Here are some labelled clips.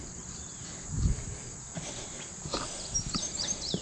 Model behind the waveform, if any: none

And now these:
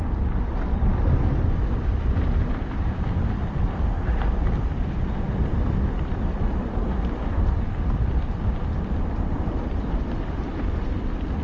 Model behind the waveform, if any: vocoder, BigVGAN v2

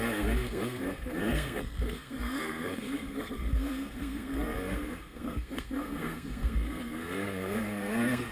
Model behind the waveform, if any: codec, SNAC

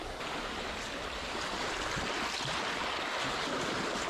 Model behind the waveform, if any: none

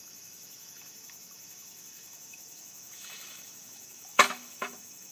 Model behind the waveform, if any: autoencoder, DAC-VAE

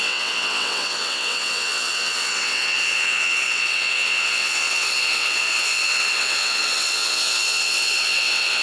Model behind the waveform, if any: vocoder, WaveNeXt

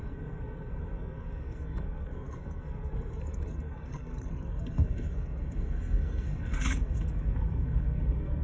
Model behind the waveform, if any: codec, SNAC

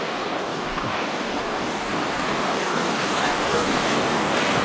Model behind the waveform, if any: codec, DAC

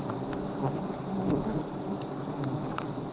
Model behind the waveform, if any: none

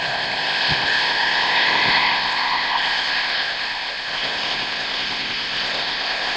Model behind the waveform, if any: codec, ZipCodec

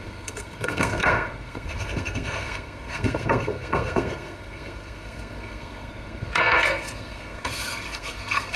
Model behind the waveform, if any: codec, SNAC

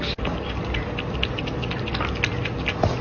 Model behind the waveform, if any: none